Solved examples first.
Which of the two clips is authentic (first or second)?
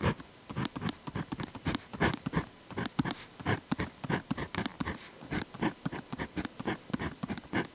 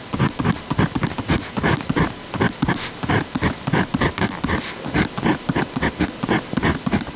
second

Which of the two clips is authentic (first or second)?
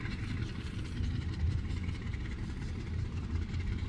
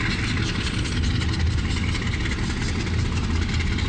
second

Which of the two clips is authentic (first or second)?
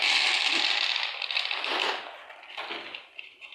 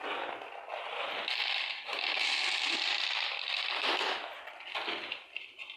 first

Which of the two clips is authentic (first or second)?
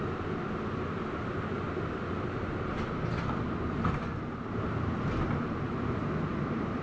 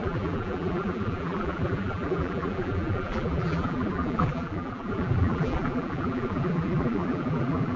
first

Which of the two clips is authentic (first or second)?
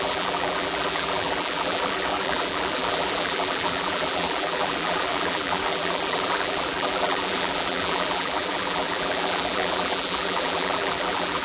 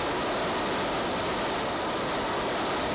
second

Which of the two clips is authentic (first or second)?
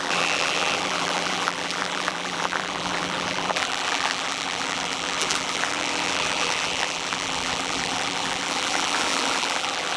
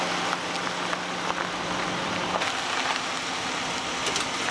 second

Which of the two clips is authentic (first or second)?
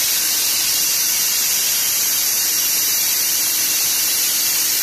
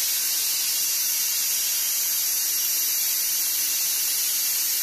second